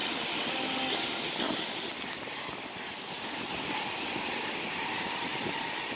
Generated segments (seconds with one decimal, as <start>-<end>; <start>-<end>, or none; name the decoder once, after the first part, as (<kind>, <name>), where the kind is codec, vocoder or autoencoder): none